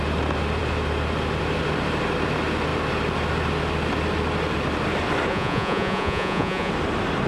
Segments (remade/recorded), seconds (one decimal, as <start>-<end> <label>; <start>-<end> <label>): 0.0-5.3 recorded; 5.3-6.7 remade; 6.7-7.3 recorded

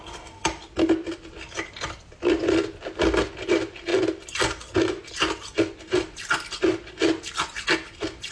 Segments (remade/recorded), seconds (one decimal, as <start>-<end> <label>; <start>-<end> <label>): 0.0-8.3 recorded

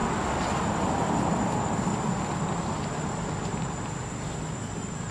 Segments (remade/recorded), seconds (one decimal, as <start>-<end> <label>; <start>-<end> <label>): 0.0-5.1 recorded

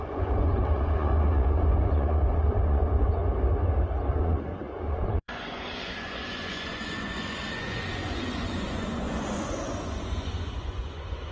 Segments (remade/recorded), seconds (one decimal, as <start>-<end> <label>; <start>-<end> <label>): 0.0-3.2 remade; 3.2-4.1 recorded; 4.1-11.3 remade